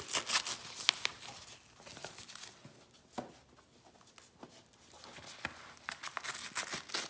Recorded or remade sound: recorded